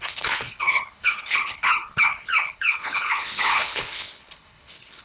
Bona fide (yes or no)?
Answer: no